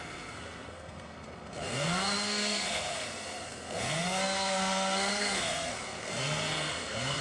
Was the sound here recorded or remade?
remade